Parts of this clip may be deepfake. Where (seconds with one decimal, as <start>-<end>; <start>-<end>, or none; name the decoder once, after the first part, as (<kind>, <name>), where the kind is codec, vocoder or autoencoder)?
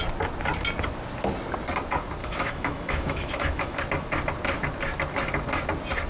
2.2-3.8 (autoencoder, DAC-VAE)